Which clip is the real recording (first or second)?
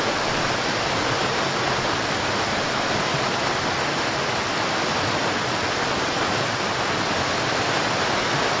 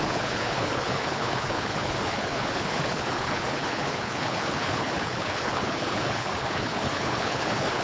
first